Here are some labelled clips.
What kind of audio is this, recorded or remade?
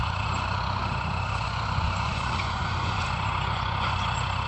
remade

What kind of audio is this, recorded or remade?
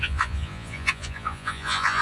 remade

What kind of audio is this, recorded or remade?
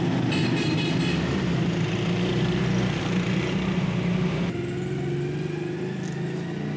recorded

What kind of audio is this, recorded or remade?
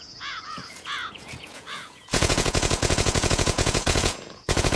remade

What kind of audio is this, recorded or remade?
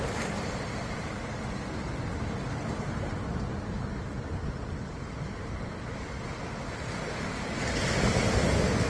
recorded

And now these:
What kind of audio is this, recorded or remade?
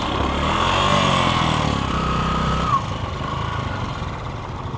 recorded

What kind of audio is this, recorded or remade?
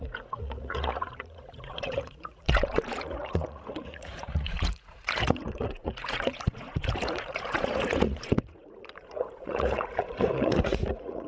remade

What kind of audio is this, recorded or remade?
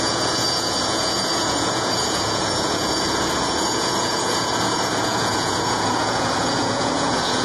remade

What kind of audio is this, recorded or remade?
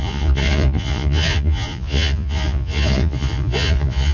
remade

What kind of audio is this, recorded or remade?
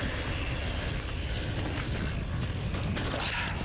recorded